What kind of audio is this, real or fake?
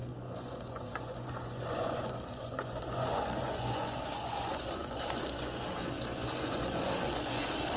fake